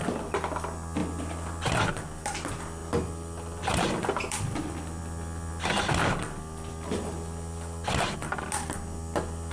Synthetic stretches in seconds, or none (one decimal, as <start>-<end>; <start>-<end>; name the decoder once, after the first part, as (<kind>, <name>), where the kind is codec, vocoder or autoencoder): none